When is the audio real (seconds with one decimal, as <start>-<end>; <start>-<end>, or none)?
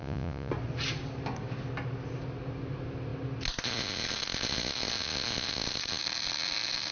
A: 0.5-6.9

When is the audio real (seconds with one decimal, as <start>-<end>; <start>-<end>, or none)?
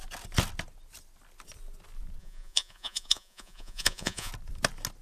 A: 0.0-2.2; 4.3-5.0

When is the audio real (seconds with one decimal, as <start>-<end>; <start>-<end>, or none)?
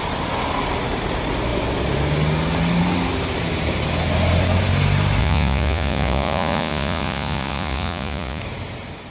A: 0.0-5.2; 8.4-9.1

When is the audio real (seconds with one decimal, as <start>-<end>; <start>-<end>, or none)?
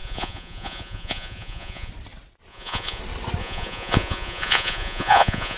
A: 1.9-2.5; 3.0-3.4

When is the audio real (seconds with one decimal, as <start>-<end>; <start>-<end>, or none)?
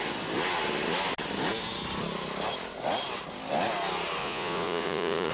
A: 0.0-4.2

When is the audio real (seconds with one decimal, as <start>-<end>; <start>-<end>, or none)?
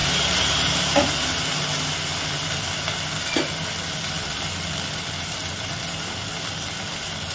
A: 0.0-7.3